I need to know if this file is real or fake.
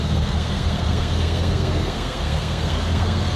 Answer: fake